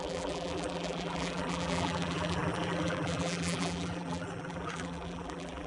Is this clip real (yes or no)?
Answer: no